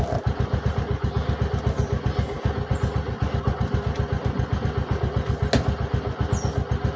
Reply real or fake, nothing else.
real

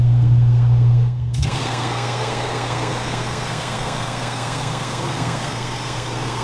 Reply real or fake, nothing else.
fake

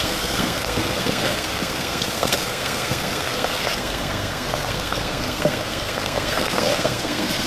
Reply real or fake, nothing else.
fake